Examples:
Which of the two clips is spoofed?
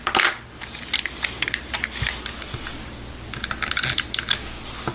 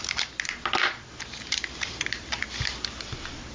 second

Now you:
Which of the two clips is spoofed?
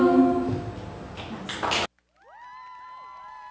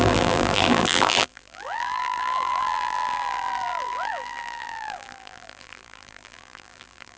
second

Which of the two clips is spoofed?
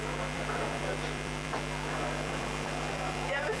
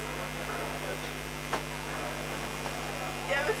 first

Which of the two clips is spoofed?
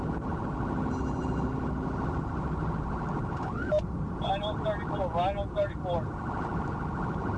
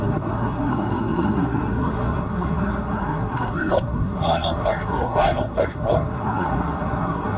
second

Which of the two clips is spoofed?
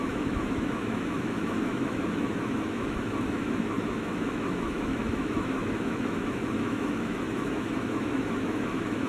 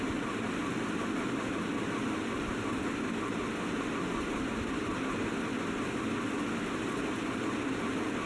first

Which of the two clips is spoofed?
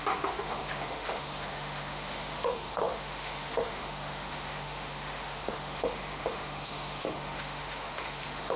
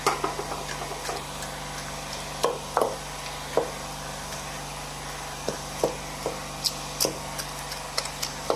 first